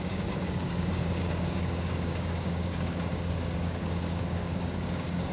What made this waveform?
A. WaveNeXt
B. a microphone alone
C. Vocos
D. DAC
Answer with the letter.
D